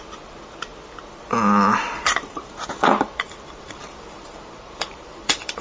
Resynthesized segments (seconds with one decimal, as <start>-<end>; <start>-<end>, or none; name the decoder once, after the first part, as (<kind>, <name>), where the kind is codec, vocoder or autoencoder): 2.0-5.6 (vocoder, BigVGAN v2)